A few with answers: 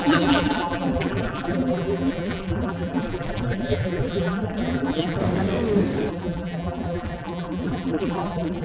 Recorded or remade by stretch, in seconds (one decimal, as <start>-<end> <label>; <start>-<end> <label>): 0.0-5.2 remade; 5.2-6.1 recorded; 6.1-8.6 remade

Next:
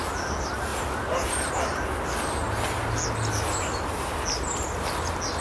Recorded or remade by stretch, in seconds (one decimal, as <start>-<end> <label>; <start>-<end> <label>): 0.0-5.4 recorded

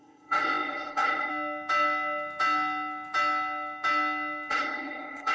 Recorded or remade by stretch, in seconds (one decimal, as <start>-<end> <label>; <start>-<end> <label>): 0.0-1.3 remade; 1.3-4.5 recorded; 4.5-5.3 remade